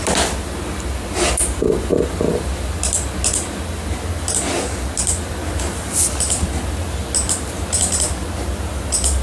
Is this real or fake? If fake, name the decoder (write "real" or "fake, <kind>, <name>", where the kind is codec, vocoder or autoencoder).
real